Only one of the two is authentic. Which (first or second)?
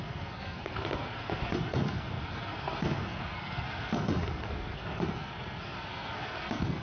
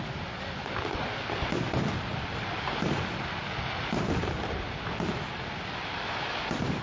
second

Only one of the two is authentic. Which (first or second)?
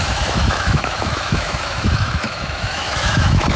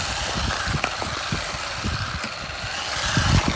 second